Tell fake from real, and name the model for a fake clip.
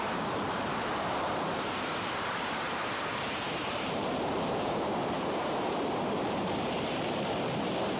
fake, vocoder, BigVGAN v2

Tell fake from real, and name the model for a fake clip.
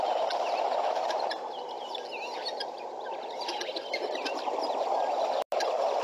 real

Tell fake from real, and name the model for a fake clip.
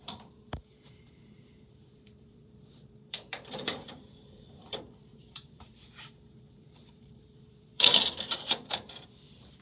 fake, vocoder, BigVGAN v2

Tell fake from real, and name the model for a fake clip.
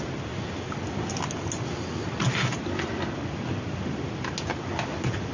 real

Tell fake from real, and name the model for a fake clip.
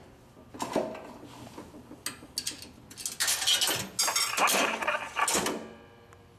real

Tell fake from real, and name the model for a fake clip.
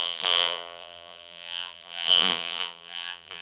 fake, vocoder, BigVGAN v2